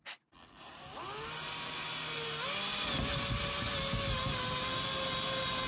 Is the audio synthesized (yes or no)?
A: no